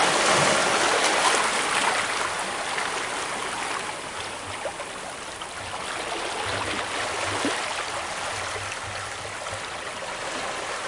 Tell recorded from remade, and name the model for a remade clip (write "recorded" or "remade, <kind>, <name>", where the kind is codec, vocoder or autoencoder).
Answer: recorded